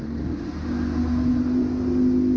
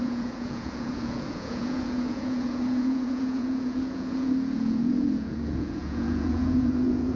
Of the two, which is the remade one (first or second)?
second